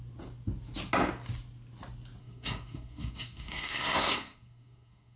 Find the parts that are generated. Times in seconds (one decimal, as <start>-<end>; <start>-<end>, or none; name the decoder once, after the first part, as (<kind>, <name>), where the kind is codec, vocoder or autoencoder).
2.2-5.2 (codec, SNAC)